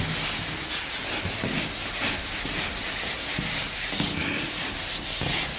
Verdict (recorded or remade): remade